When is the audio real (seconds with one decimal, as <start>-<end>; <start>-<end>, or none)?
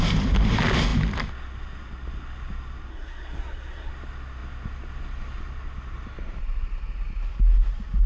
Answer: 0.0-2.9; 3.9-8.1